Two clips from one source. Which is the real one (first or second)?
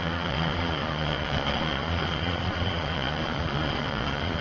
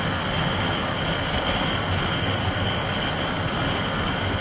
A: second